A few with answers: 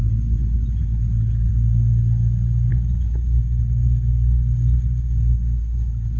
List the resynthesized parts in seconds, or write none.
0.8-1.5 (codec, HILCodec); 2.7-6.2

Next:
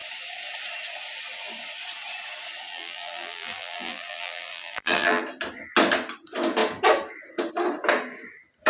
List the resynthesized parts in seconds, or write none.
2.7-5.2 (vocoder, BigVGAN v2)

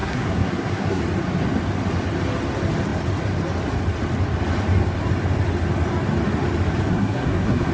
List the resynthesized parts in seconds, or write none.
0.0-1.0 (codec, SNAC); 6.9-7.7

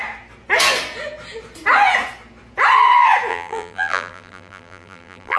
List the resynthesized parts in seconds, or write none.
3.3-5.4 (vocoder, BigVGAN v2)

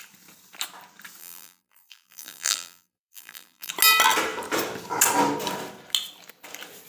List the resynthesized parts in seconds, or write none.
1.2-3.7 (vocoder, BigVGAN v2)

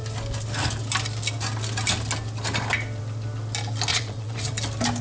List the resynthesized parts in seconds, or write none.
3.9-4.4 (vocoder, Vocos)